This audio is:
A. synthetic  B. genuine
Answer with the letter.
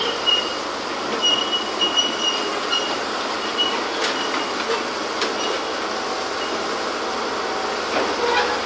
B